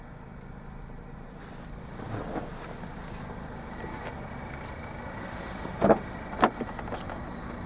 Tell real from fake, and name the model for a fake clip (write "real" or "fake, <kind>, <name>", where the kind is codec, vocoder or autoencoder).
fake, vocoder, BigVGAN v2